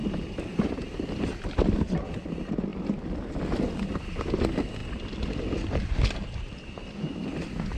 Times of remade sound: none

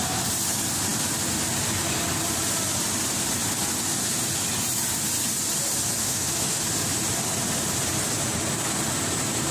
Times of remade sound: 6.0-6.6

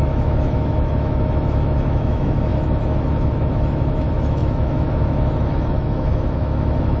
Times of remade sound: 0.0-7.0

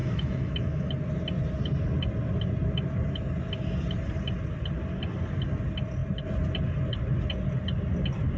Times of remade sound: 0.0-0.9

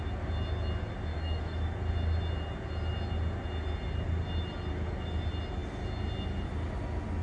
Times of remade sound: 1.1-1.8

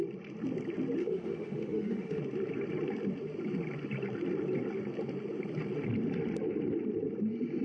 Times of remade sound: 1.0-2.2